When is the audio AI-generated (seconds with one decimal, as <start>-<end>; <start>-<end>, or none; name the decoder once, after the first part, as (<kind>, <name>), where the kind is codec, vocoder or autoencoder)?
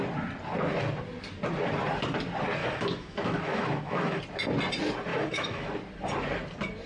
2.6-4.2 (autoencoder, DAC-VAE); 5.1-5.7